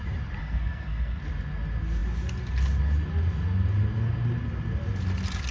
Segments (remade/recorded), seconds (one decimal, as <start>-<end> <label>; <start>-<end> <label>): 0.0-0.4 recorded; 0.4-1.2 remade; 1.2-5.5 recorded